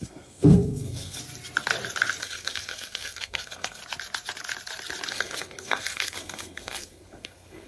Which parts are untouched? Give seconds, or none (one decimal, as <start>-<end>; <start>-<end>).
1.2-2.2; 3.8-5.1